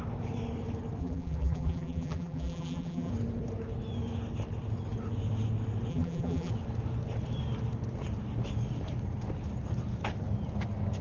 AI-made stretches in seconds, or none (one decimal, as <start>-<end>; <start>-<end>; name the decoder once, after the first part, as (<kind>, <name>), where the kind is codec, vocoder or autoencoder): 1.0-3.1 (vocoder, BigVGAN v2); 5.9-6.5